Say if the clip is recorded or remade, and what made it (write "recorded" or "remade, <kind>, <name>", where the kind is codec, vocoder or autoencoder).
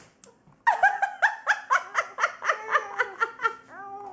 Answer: recorded